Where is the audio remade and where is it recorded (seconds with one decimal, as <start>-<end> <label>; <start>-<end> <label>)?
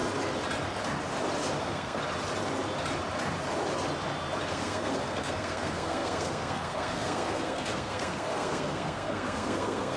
0.0-1.6 recorded; 1.6-2.0 remade; 2.0-4.5 recorded; 4.5-10.0 remade